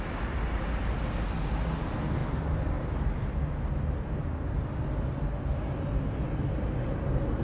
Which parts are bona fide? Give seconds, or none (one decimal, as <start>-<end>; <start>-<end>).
0.0-7.4